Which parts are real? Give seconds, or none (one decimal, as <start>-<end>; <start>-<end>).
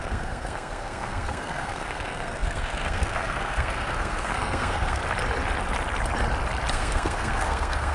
5.0-6.7